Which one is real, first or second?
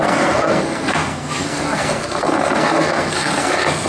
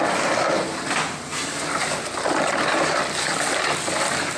second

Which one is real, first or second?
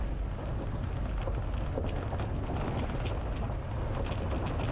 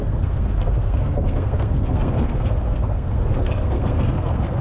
first